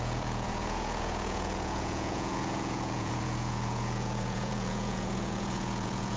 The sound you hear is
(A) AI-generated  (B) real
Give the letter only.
A